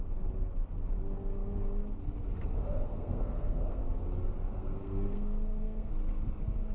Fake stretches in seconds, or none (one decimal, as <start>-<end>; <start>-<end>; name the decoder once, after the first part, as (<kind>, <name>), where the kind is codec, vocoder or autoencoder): 2.9-3.8 (codec, SNAC); 4.5-5.9